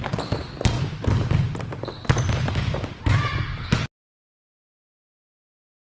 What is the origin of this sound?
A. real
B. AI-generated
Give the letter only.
A